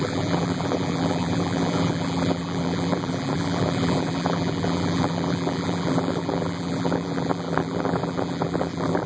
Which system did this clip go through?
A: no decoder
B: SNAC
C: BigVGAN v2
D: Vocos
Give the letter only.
C